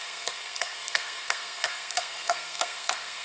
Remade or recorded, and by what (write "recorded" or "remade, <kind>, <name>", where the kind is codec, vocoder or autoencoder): remade, codec, SNAC